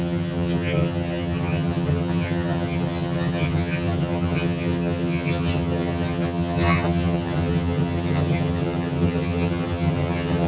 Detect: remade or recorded remade